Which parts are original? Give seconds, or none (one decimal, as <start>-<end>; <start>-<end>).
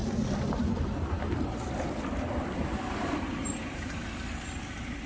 0.0-5.1